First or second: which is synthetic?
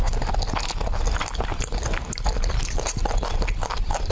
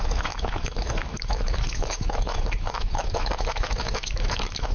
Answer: second